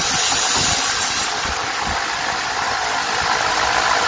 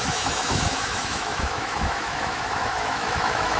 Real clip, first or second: first